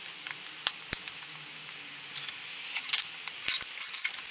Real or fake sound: real